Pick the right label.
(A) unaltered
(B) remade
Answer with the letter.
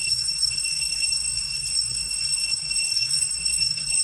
B